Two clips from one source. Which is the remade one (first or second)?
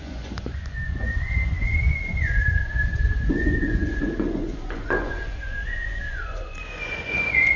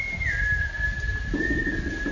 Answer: first